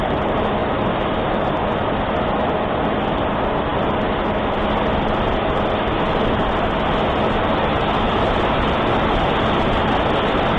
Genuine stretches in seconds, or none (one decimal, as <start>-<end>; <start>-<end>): 0.0-10.6